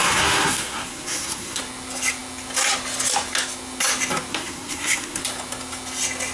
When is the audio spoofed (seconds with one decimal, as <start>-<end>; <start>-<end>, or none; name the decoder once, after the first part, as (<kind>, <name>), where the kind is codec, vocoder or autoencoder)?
0.0-1.6 (codec, SNAC); 4.3-5.2